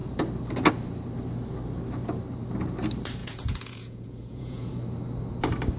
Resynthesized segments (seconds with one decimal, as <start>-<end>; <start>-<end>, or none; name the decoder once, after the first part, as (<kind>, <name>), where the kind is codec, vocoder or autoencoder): 3.2-4.7 (vocoder, Vocos)